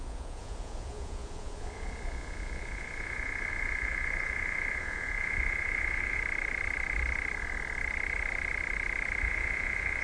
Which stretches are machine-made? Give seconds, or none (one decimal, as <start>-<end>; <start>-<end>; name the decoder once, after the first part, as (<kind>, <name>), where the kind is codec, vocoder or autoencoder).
0.0-6.2 (vocoder, Vocos); 9.2-10.0

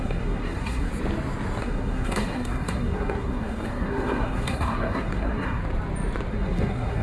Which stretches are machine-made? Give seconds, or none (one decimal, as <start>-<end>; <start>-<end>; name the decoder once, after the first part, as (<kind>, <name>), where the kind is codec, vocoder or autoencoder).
0.0-0.9 (codec, SNAC); 1.6-5.6; 6.3-7.0

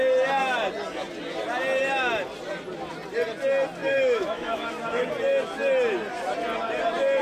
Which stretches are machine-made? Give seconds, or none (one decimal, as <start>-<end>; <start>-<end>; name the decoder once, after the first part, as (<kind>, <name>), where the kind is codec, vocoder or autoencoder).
3.8-5.1 (autoencoder, DAC-VAE)

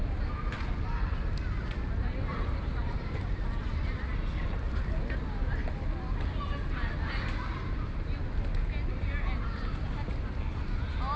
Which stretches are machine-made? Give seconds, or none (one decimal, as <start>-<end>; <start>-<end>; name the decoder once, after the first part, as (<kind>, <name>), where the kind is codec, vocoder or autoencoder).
2.3-3.0 (vocoder, BigVGAN v2)

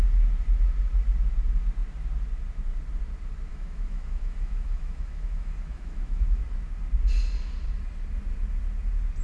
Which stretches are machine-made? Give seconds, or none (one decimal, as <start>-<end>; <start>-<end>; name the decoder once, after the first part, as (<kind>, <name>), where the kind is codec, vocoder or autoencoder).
3.5-6.4 (autoencoder, DAC-VAE)